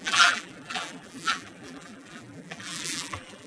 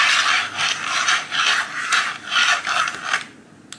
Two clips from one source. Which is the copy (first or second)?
first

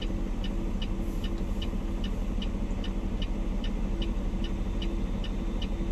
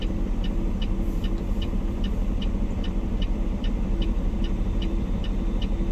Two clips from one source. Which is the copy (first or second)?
second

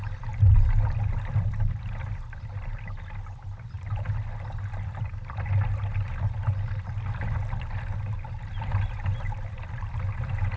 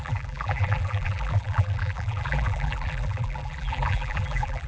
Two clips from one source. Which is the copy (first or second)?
second